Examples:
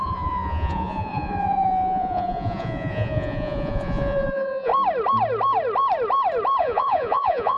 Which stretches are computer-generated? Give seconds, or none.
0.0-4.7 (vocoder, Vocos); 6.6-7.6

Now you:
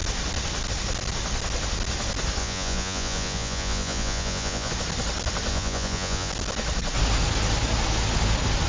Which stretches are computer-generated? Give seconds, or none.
2.4-4.7 (vocoder, Vocos); 5.5-6.3

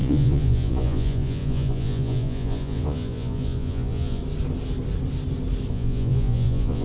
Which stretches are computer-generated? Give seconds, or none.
0.0-4.2 (vocoder, Vocos); 5.7-6.8

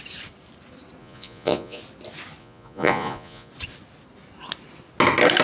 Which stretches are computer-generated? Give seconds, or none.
1.0-1.8 (vocoder, Vocos); 2.4-3.5

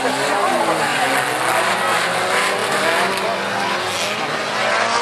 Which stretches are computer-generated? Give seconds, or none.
none

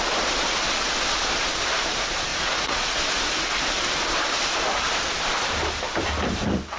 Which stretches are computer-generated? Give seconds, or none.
2.3-3.0 (vocoder, Vocos)